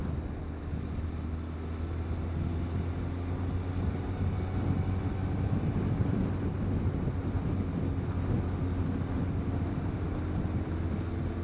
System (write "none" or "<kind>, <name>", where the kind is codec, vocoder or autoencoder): none